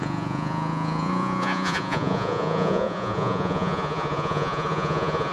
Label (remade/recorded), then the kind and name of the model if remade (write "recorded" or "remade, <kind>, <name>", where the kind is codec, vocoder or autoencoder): remade, vocoder, Vocos